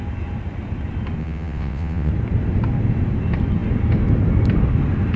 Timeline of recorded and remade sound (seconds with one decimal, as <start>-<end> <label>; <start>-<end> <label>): 0.0-1.2 recorded; 1.2-2.1 remade; 2.1-5.2 recorded